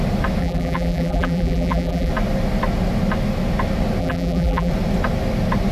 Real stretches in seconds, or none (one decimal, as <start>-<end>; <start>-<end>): 0.0-0.4; 2.1-4.0; 4.7-5.7